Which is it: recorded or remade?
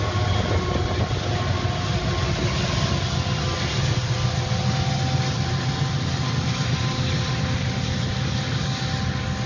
recorded